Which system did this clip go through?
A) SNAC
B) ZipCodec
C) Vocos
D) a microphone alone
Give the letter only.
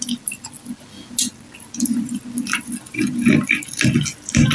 D